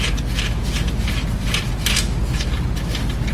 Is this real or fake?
real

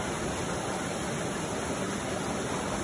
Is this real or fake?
real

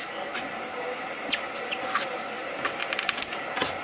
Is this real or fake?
real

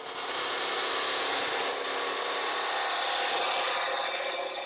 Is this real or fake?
real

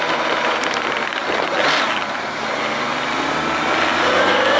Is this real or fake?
real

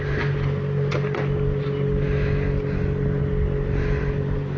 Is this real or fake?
real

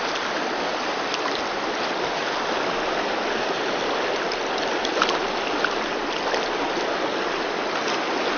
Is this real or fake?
real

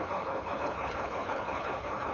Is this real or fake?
fake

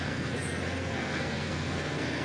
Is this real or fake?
fake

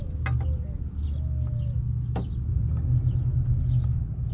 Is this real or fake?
real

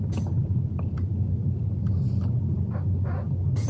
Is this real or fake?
real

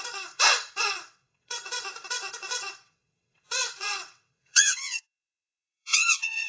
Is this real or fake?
fake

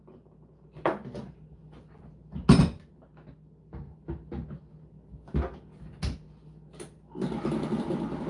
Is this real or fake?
real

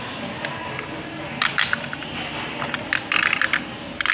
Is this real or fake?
real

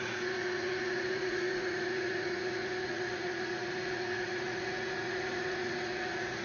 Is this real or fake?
fake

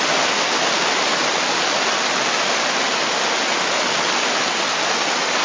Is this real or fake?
real